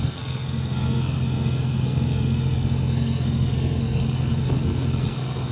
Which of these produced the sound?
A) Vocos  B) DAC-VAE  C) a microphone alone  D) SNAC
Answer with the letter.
D